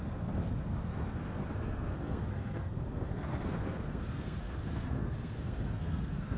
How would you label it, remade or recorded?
remade